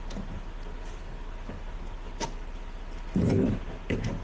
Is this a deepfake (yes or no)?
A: no